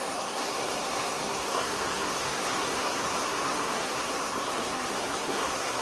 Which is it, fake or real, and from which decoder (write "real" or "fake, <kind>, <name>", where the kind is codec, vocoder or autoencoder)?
fake, codec, SNAC